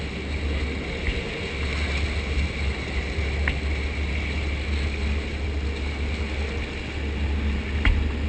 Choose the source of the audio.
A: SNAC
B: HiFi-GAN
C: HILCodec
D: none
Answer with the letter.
D